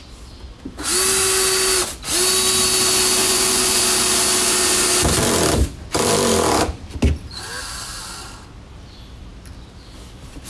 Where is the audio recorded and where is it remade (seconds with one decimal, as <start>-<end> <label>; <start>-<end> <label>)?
0.0-3.2 recorded; 3.2-3.8 remade; 3.8-10.5 recorded